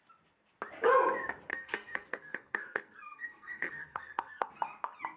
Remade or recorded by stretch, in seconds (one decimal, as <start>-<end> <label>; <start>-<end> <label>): 0.0-1.5 recorded; 1.5-4.5 remade; 4.5-5.2 recorded

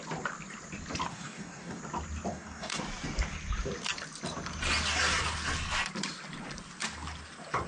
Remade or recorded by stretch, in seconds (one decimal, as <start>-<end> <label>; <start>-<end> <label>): 0.0-1.1 recorded; 1.1-1.8 remade; 1.8-2.3 recorded; 2.3-2.8 remade; 2.8-7.7 recorded

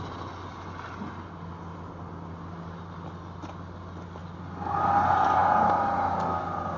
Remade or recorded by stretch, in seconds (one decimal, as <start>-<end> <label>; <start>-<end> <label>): 0.0-6.8 recorded